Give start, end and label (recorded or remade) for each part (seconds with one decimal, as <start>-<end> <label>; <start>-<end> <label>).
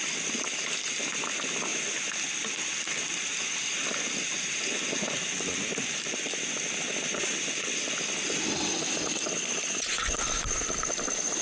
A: 0.0-11.4 recorded